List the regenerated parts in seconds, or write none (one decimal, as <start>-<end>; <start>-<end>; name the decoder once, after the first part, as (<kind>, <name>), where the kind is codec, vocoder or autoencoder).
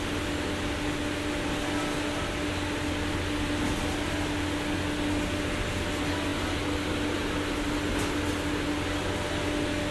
none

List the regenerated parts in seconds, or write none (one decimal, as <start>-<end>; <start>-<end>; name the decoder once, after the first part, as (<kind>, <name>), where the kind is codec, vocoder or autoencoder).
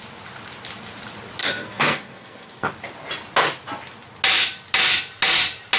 1.4-2.7 (codec, SNAC)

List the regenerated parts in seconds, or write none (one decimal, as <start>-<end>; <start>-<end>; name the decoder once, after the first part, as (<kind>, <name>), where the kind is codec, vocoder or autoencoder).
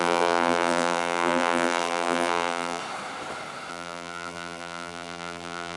0.0-2.8 (vocoder, BigVGAN v2); 3.7-5.8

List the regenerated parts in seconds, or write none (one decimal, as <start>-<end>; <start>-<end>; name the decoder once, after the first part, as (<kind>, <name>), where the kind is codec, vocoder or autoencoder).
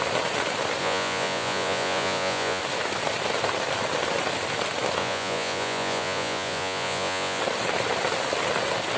0.8-2.6 (vocoder, Vocos); 5.0-7.4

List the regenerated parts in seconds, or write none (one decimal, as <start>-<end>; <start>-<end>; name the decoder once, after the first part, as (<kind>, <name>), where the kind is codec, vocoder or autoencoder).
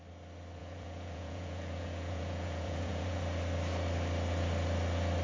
0.6-3.2 (vocoder, Vocos)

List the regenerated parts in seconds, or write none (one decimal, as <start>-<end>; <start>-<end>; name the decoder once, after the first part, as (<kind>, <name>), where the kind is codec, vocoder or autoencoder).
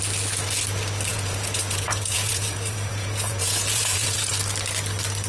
1.1-4.3 (vocoder, Vocos)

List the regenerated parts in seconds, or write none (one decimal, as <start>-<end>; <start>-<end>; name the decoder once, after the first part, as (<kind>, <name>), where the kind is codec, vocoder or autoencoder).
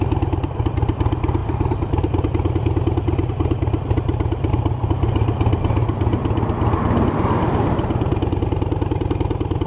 none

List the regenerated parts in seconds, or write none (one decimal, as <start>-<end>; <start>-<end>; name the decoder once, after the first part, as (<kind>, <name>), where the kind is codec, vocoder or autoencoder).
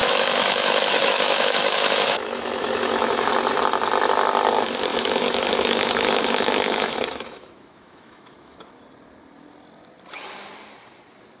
0.0-3.3 (autoencoder, DAC-VAE); 4.9-8.7